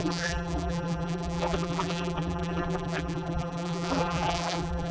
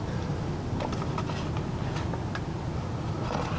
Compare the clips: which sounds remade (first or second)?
first